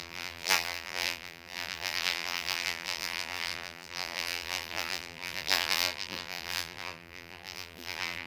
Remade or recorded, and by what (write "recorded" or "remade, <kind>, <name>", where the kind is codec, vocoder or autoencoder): remade, vocoder, BigVGAN v2